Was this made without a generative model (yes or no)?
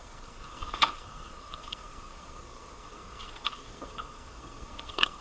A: no